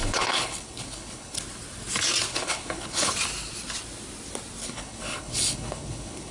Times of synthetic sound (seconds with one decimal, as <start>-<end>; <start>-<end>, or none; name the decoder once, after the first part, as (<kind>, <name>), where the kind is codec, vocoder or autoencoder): 0.0-1.4 (codec, HILCodec); 2.3-3.1; 4.6-6.3